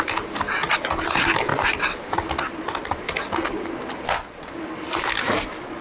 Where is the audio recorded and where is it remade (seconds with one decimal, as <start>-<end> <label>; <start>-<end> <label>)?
0.0-1.5 recorded; 1.5-5.0 remade; 5.0-5.8 recorded